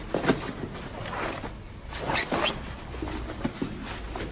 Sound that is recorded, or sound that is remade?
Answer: recorded